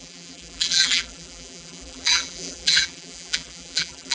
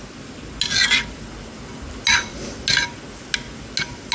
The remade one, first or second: first